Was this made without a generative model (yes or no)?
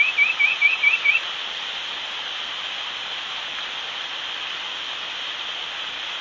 yes